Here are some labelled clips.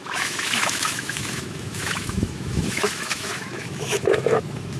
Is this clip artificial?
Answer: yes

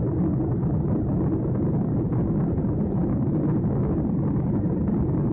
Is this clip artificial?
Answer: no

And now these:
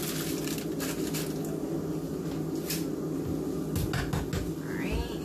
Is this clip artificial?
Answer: no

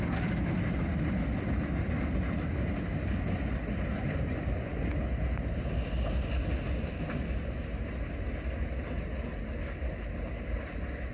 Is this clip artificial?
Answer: no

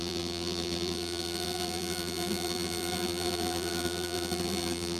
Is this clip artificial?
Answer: yes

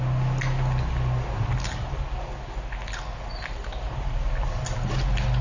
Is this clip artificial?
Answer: no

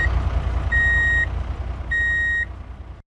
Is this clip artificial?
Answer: no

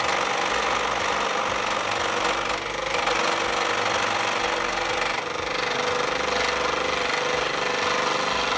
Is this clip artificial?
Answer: no